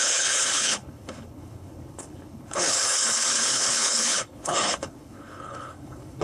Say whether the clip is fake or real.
fake